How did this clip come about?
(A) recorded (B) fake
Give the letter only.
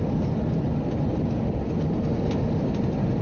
A